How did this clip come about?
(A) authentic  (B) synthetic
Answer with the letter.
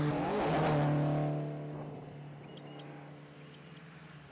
A